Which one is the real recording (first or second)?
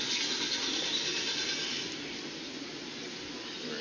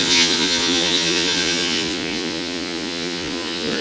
first